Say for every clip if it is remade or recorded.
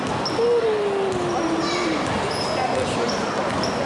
recorded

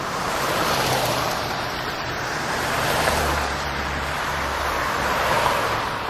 remade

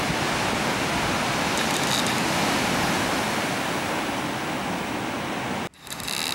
recorded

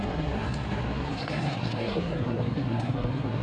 remade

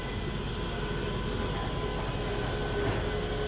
recorded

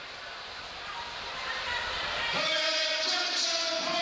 recorded